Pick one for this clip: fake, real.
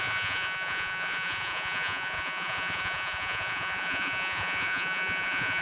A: fake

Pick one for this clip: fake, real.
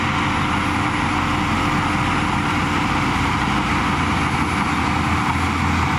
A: real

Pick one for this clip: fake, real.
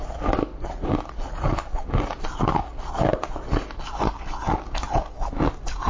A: real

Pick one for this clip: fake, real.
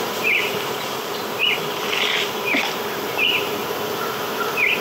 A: real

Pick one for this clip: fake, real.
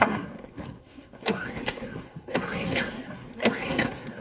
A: fake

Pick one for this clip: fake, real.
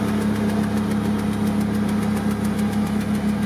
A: real